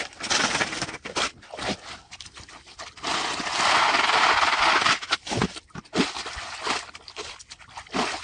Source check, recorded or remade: recorded